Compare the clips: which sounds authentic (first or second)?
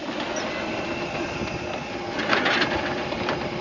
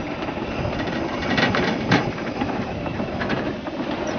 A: first